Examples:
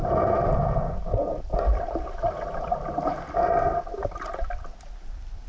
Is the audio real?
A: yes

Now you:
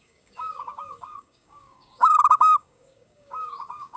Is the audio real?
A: no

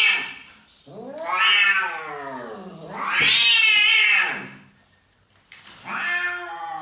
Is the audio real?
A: yes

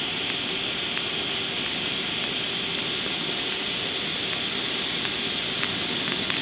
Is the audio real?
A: yes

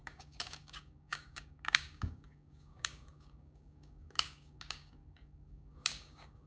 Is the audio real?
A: no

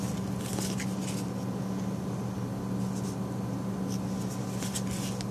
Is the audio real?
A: yes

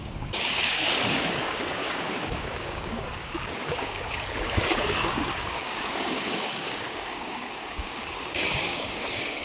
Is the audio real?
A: no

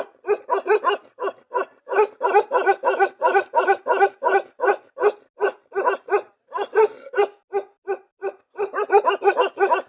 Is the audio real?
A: yes